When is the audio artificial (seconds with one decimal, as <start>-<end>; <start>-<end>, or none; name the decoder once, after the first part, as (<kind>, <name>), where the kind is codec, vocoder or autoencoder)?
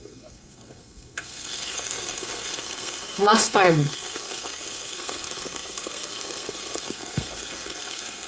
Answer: 0.0-8.3 (codec, SNAC)